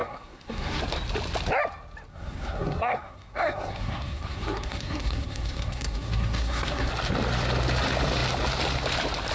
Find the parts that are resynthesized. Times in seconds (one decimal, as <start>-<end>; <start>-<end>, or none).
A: 0.0-0.8; 2.1-6.9